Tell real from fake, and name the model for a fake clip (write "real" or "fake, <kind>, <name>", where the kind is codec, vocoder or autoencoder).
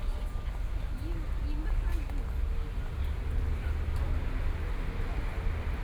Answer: real